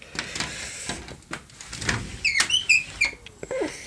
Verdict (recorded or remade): recorded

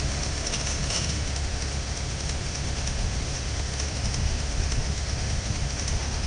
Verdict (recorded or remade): remade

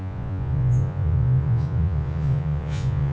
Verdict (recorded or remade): remade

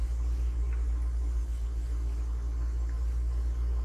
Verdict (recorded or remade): recorded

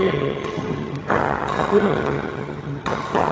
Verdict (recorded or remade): remade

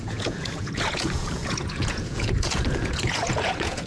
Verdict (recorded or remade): remade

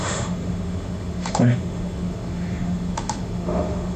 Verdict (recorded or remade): remade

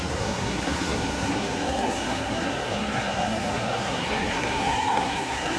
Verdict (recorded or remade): remade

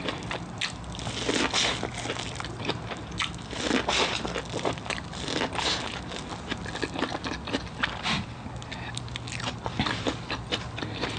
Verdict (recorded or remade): recorded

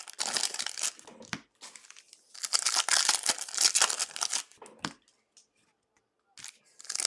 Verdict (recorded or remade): recorded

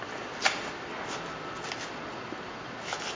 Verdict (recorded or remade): recorded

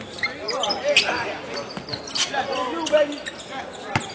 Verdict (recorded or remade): recorded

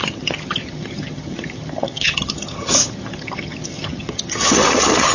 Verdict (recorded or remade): remade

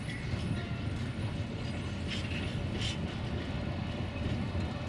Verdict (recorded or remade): recorded